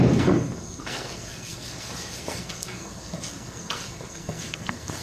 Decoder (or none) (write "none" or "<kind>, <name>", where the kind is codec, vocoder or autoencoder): codec, SNAC